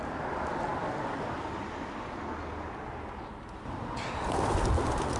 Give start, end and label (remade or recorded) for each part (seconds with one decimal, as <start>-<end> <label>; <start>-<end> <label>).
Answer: 0.0-5.2 recorded